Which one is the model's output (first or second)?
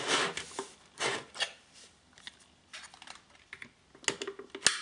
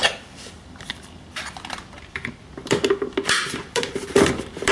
second